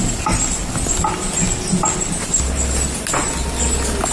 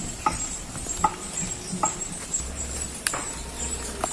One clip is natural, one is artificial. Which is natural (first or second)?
first